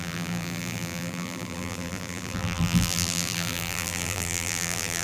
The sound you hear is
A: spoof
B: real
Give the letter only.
A